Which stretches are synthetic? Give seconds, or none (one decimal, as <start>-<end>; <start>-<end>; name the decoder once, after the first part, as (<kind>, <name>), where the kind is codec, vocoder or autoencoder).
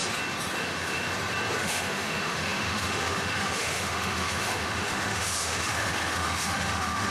0.6-1.1 (autoencoder, DAC-VAE); 1.6-7.1